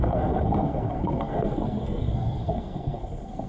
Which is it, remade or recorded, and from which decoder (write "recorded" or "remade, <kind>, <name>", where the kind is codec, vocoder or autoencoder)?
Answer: remade, codec, SNAC